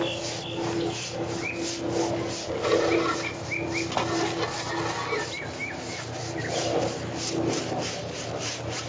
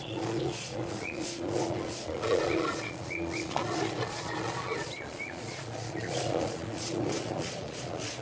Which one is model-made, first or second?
second